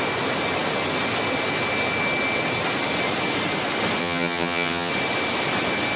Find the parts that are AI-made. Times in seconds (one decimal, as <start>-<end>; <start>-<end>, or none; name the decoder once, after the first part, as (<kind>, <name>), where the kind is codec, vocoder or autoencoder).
4.0-4.9 (vocoder, HiFi-GAN)